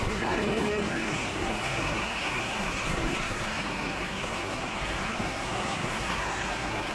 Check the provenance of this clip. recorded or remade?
remade